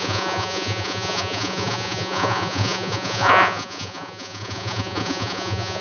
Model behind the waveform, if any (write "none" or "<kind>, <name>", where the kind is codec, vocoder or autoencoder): vocoder, Vocos